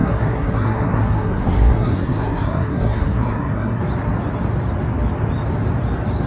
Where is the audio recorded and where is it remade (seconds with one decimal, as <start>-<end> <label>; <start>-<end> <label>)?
0.0-3.8 remade; 3.8-6.3 recorded